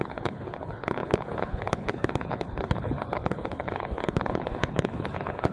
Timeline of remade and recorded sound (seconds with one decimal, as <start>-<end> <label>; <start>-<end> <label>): 0.0-5.5 remade